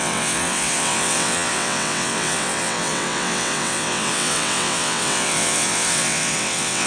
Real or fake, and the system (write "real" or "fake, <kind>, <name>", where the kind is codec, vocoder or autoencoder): fake, vocoder, WaveNeXt